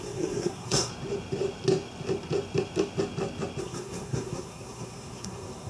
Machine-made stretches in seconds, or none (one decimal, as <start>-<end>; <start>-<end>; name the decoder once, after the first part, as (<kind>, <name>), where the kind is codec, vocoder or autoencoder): 0.0-0.9 (codec, SNAC); 3.6-5.7